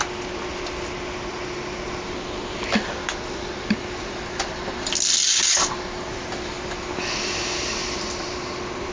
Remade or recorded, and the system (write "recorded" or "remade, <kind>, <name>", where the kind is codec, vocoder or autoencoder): recorded